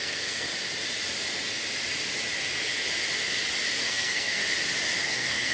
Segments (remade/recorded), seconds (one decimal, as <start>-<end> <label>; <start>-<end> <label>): 0.0-0.5 remade; 0.5-3.8 recorded; 3.8-4.4 remade; 4.4-5.0 recorded; 5.0-5.5 remade